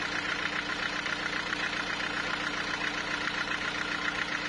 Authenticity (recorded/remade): recorded